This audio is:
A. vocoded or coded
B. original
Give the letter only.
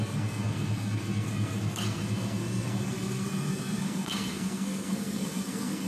A